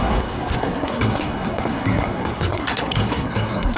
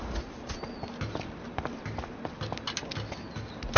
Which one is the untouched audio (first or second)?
second